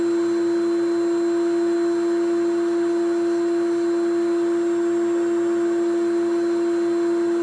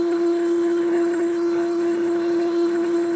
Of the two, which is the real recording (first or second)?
first